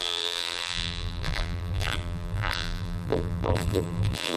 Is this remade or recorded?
remade